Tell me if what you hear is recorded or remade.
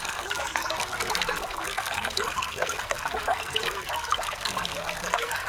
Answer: remade